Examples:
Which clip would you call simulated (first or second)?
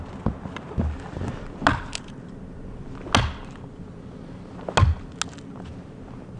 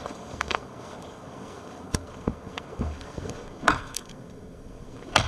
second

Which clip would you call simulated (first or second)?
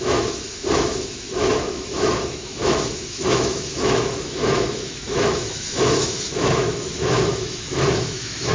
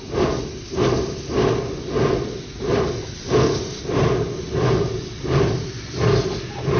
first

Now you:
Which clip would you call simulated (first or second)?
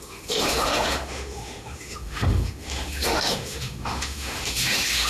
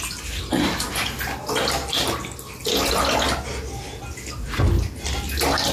first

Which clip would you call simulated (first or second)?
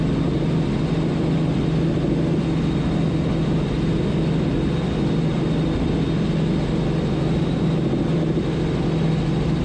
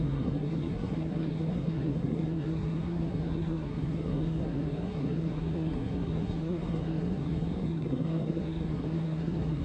second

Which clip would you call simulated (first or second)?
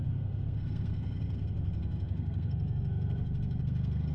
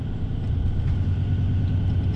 first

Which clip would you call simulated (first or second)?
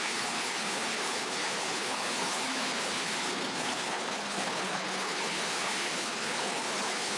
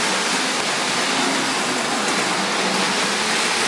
first